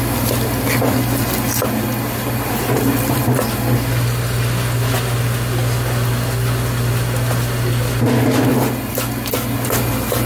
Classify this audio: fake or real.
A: real